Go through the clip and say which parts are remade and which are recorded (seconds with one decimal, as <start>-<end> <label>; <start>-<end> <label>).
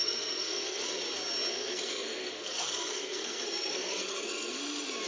0.0-0.8 remade; 0.8-1.5 recorded; 1.5-4.6 remade; 4.6-5.1 recorded